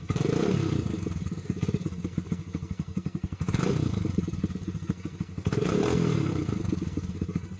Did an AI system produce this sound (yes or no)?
yes